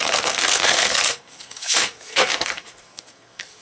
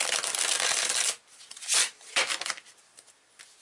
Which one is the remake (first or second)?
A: first